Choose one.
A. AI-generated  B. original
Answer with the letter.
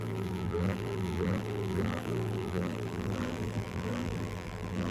A